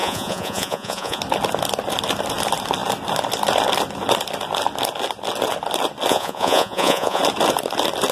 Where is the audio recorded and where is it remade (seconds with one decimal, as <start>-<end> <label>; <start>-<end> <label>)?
0.0-1.2 remade; 1.2-6.1 recorded; 6.1-7.2 remade; 7.2-8.1 recorded